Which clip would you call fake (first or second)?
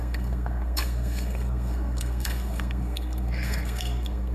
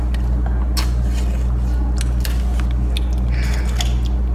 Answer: first